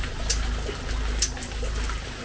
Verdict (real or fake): real